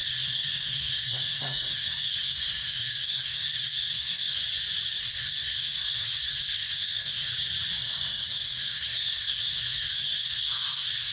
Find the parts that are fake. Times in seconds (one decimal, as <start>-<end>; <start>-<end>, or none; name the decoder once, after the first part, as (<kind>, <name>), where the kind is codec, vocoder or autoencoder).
0.0-4.4 (codec, SNAC); 5.0-7.3; 7.8-11.1